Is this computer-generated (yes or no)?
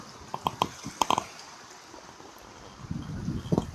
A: no